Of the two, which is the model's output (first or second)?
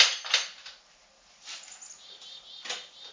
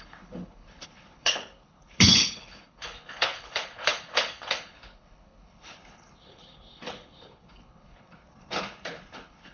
second